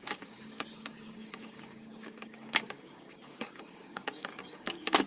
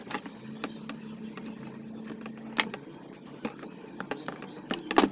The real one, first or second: second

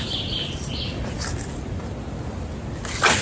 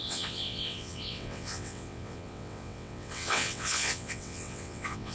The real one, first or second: first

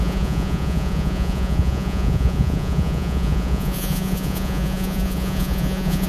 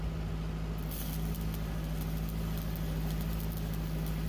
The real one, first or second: second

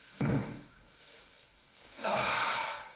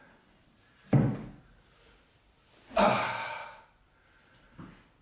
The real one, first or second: second